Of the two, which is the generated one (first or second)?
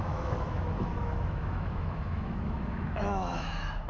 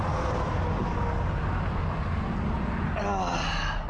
first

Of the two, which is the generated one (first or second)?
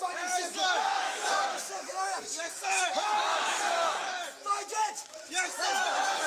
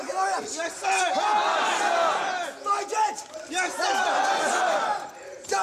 first